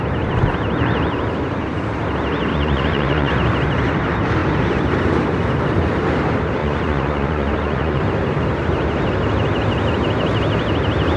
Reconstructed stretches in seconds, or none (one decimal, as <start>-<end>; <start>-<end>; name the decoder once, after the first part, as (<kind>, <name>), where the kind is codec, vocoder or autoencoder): 2.5-3.3 (vocoder, Vocos); 6.6-8.0